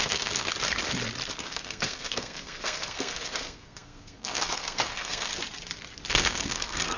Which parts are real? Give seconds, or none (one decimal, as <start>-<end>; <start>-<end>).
0.5-1.4; 5.3-6.1